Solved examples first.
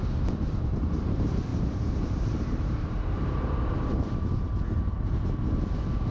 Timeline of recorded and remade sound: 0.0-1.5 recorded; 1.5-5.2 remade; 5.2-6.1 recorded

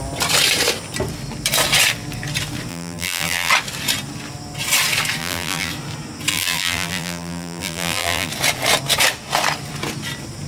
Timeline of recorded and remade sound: 0.0-2.7 recorded; 2.7-3.5 remade; 3.5-5.2 recorded; 5.2-5.7 remade; 5.7-6.3 recorded; 6.3-8.3 remade; 8.3-10.5 recorded

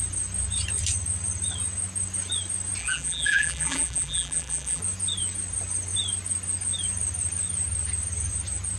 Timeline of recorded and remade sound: 0.0-2.8 recorded; 2.8-4.8 remade; 4.8-8.8 recorded

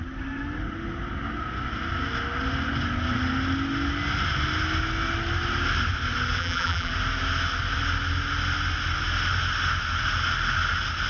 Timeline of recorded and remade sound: 0.0-6.4 recorded; 6.4-6.9 remade; 6.9-11.1 recorded

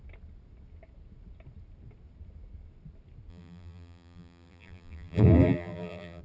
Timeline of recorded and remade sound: 0.0-3.3 recorded; 3.3-6.2 remade

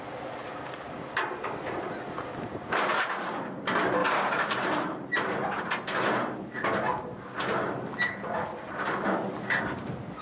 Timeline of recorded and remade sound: 0.0-0.4 recorded; 0.4-1.0 remade; 1.0-4.0 recorded; 4.0-5.6 remade; 5.6-10.2 recorded

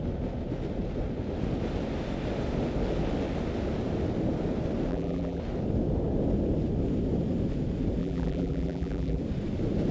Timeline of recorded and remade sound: 0.0-4.9 recorded; 4.9-5.4 remade; 5.4-8.0 recorded; 8.0-9.2 remade; 9.2-9.9 recorded